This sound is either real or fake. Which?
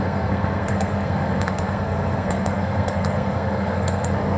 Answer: fake